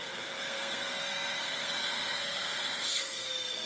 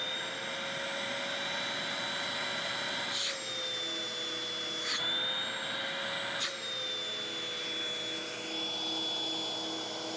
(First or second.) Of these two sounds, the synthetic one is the first